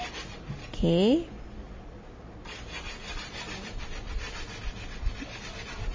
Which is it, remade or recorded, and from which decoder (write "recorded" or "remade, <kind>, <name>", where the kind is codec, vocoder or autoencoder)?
recorded